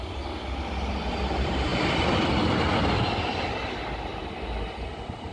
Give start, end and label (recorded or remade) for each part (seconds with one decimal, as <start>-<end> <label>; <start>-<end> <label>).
0.0-5.3 recorded